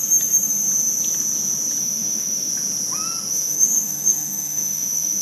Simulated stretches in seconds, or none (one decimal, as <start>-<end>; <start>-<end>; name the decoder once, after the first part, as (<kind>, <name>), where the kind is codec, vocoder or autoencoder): 1.8-2.5 (autoencoder, DAC-VAE); 3.3-5.2